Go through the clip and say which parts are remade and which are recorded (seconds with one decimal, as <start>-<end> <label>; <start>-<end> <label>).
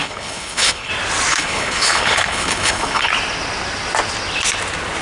0.0-0.9 remade; 0.9-1.3 recorded; 1.3-3.1 remade; 3.1-5.0 recorded